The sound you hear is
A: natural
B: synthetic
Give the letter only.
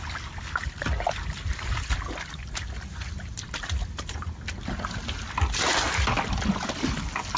A